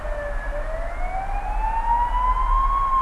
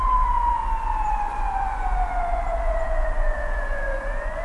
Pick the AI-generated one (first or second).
second